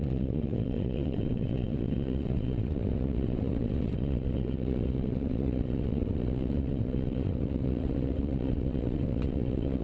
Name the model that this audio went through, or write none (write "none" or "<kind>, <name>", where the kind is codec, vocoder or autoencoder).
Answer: vocoder, WaveNeXt